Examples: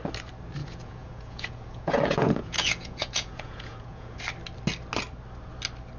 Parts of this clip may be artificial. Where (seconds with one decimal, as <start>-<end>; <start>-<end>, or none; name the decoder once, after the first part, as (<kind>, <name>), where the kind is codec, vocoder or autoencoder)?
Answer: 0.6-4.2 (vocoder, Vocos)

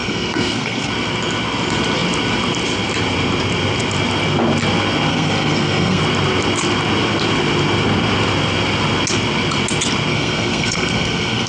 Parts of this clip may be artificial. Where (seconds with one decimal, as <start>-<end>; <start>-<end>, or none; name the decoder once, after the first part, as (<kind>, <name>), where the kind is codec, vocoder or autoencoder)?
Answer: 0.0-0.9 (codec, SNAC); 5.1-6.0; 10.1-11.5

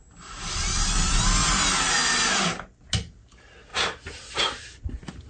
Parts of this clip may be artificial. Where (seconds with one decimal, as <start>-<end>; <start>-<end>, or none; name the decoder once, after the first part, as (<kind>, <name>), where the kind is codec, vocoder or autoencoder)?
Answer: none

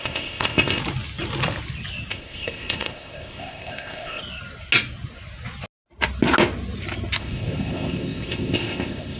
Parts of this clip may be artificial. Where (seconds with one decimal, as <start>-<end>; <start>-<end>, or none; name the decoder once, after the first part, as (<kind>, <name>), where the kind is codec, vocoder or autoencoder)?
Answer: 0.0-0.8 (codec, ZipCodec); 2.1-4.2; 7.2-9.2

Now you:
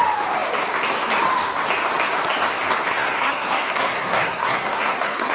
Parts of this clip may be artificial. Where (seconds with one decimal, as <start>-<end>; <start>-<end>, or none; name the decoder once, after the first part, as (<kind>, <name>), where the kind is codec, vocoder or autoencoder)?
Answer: 2.9-5.3 (codec, SNAC)

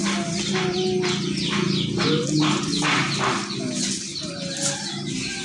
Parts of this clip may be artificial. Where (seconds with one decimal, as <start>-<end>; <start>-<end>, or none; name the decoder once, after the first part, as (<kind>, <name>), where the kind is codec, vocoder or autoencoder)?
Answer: none

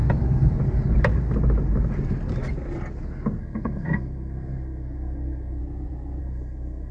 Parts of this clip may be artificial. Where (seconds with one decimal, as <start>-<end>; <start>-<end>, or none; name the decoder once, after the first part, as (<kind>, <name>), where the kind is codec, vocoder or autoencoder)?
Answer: 3.4-5.6 (codec, SNAC); 6.2-6.9

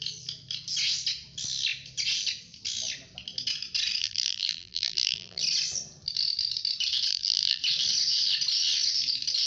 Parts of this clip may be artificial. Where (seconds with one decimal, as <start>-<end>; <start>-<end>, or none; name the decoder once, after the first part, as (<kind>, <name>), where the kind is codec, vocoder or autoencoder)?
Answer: 4.0-5.4 (vocoder, BigVGAN v2); 7.1-7.6